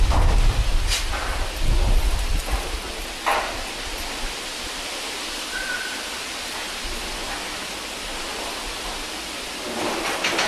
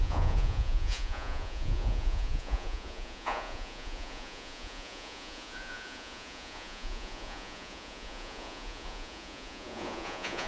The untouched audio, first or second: first